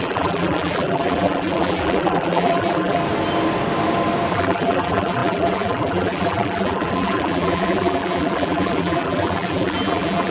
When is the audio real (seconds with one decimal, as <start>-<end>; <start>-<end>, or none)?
3.0-4.3